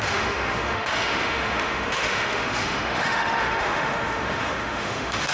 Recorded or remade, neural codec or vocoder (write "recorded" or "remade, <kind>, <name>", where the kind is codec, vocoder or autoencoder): remade, autoencoder, DAC-VAE